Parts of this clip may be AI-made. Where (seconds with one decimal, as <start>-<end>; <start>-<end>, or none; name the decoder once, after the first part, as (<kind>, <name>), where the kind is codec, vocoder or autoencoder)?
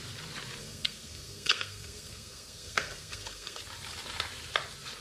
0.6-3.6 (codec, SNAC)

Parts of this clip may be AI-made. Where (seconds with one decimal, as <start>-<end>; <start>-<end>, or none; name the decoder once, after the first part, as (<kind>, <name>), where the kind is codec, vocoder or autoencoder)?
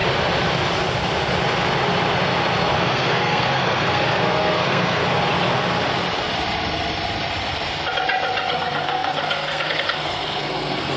2.8-5.0 (codec, SNAC); 8.5-11.0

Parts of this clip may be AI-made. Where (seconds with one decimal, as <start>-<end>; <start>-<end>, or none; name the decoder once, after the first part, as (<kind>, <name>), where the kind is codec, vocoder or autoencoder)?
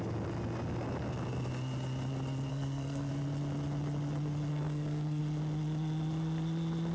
2.5-3.1 (codec, SNAC); 4.5-5.2